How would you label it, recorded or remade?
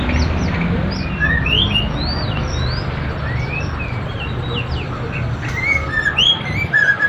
recorded